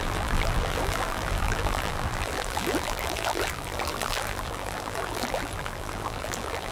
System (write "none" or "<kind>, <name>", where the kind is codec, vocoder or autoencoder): vocoder, BigVGAN v2